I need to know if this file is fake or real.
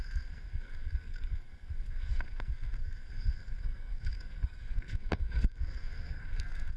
fake